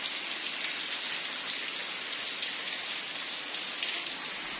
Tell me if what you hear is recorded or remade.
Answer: recorded